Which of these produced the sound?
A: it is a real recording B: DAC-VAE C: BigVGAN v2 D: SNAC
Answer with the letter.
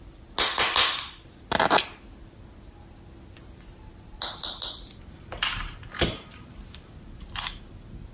A